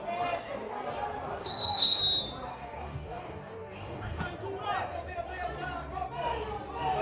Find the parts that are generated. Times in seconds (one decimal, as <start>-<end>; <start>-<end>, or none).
1.4-2.0; 2.5-4.2